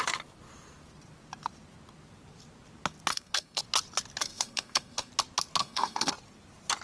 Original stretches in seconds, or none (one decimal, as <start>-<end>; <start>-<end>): 0.0-3.1; 3.6-4.2; 5.1-5.6; 6.1-6.8